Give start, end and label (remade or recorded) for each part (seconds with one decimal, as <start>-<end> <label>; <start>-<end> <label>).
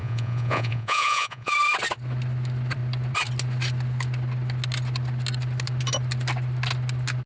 0.0-1.5 remade; 1.5-7.3 recorded